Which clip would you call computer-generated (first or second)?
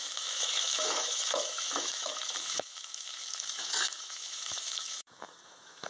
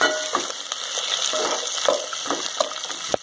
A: first